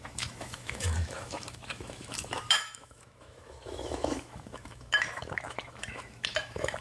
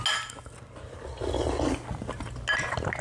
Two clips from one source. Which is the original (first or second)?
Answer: second